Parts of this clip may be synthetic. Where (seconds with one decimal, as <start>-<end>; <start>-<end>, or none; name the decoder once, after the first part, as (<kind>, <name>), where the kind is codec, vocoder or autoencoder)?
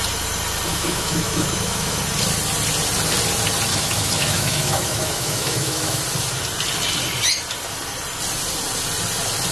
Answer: 0.7-2.0 (autoencoder, DAC-VAE); 3.7-6.0